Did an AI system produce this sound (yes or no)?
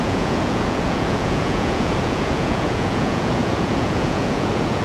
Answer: yes